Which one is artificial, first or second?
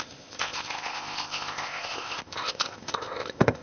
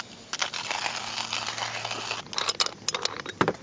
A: first